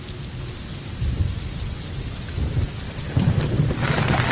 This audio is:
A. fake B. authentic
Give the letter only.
B